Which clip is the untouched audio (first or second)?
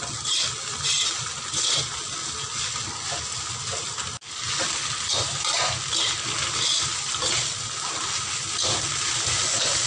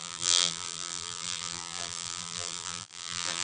first